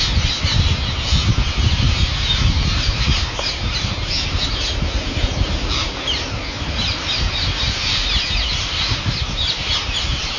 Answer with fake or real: real